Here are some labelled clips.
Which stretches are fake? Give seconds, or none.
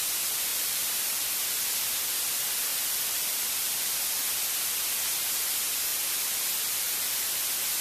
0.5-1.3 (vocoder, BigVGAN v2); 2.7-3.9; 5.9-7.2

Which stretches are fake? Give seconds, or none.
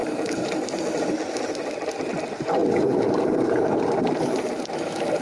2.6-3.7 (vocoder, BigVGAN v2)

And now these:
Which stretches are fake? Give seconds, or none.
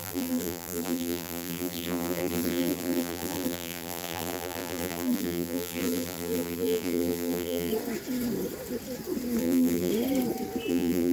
0.0-7.7 (vocoder, BigVGAN v2); 9.4-9.9; 10.7-11.1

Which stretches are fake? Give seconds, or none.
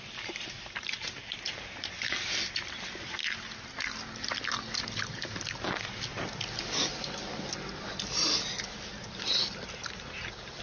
none